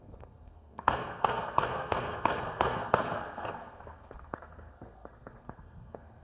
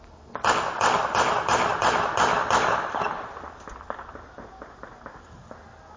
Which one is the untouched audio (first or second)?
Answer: second